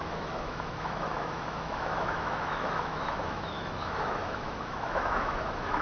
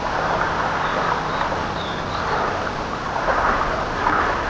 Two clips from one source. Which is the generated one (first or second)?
first